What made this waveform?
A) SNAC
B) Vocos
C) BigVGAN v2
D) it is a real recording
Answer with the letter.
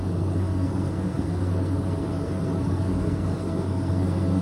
A